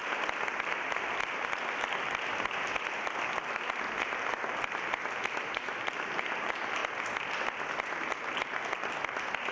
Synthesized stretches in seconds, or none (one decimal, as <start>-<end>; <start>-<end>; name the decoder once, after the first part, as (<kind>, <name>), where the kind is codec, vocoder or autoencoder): none